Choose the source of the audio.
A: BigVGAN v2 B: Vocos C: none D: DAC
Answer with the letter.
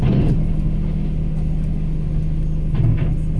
C